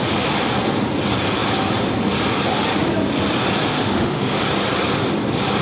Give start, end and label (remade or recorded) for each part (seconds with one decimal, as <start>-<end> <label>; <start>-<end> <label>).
0.0-3.7 recorded; 3.7-4.4 remade; 4.4-5.6 recorded